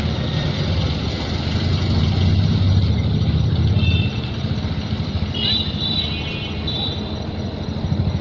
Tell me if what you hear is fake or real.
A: real